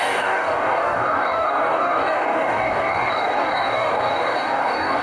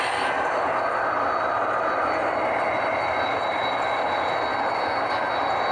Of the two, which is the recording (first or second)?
second